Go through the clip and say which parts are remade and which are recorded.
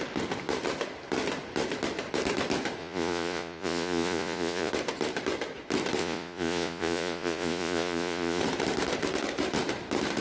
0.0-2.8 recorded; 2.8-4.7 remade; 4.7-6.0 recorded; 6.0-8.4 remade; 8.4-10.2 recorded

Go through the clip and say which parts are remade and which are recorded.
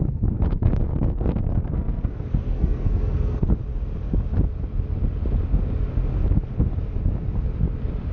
0.0-3.6 remade; 3.6-8.1 recorded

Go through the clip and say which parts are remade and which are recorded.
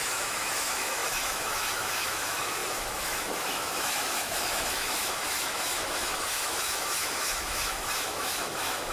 0.0-8.9 remade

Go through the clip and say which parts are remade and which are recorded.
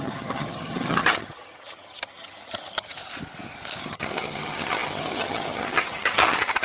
0.0-3.1 remade; 3.1-3.8 recorded; 3.8-6.6 remade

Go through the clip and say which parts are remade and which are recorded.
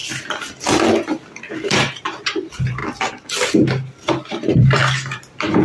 0.0-1.5 recorded; 1.5-2.8 remade; 2.8-4.3 recorded; 4.3-5.6 remade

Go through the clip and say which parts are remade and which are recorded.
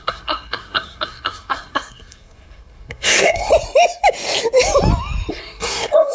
0.0-3.5 remade; 3.5-5.3 recorded; 5.3-6.1 remade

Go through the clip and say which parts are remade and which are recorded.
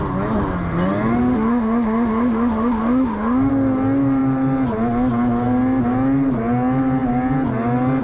0.0-1.2 recorded; 1.2-3.5 remade; 3.5-8.0 recorded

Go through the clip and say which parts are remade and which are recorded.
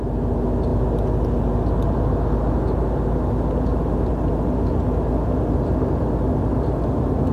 0.0-7.3 recorded